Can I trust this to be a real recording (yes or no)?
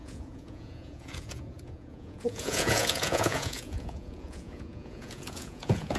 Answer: no